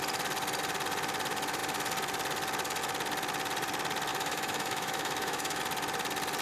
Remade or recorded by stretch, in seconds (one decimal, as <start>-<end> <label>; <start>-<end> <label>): 0.0-4.1 recorded; 4.1-5.6 remade; 5.6-6.4 recorded